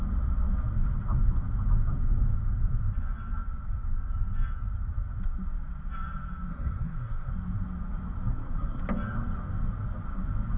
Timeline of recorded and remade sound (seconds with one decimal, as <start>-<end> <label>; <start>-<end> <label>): 0.0-6.5 recorded; 6.5-7.3 remade; 7.3-8.3 recorded; 8.3-8.8 remade; 8.8-10.6 recorded